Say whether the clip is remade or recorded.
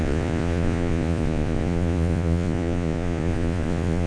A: remade